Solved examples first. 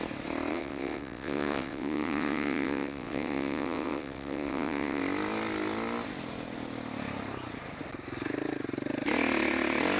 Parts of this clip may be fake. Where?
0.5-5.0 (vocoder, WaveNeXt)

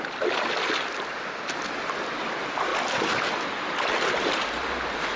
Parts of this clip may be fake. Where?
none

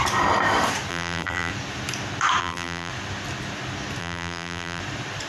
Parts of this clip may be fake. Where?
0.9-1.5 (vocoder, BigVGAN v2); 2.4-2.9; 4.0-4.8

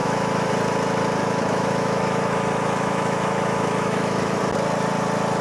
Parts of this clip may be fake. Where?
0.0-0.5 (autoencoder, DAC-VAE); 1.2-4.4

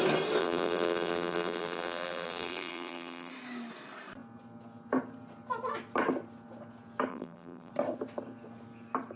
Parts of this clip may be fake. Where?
0.4-3.3 (vocoder, BigVGAN v2); 7.1-7.7

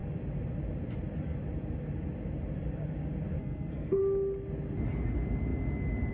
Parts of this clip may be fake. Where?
3.4-4.0 (codec, SNAC)

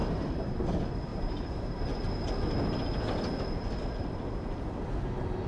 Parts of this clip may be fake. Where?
0.0-0.7 (vocoder, BigVGAN v2); 1.1-1.8

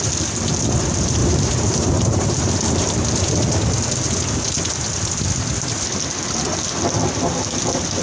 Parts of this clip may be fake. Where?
1.2-3.5 (vocoder, BigVGAN v2)